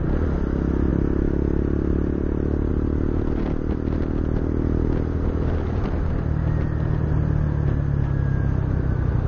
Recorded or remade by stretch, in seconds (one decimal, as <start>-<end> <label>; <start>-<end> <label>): 0.0-9.3 recorded